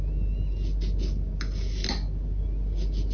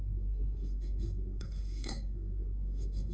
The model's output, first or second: second